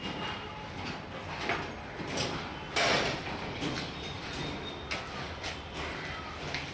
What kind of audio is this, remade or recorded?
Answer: recorded